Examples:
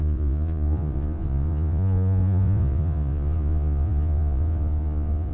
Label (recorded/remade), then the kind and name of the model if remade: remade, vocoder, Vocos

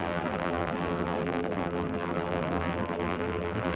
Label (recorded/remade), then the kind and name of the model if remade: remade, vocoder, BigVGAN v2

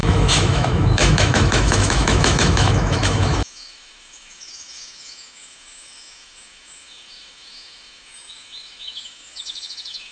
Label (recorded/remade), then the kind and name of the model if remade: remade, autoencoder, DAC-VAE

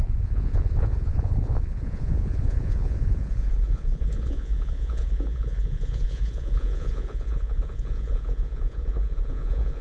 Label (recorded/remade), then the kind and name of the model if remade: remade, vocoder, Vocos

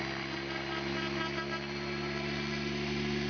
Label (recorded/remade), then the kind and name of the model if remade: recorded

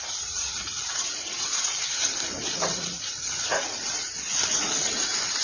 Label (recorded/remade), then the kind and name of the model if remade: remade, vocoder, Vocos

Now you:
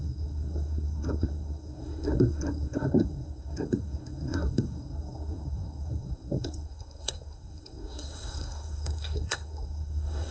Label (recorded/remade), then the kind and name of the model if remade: remade, codec, SNAC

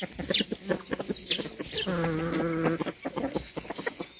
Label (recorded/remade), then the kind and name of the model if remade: recorded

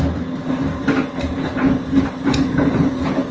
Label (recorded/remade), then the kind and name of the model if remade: recorded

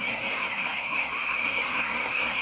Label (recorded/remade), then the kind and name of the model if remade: remade, codec, SNAC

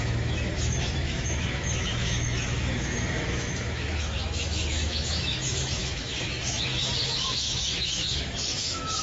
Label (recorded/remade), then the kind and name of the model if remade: remade, autoencoder, DAC-VAE